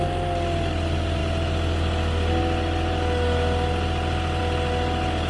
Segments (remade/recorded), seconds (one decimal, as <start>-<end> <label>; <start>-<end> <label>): 0.0-5.3 recorded